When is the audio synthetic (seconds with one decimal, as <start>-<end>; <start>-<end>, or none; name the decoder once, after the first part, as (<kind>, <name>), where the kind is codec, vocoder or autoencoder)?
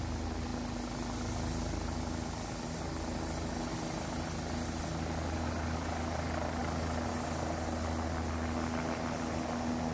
none